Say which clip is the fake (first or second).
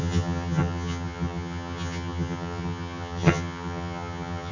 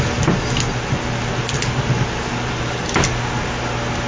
first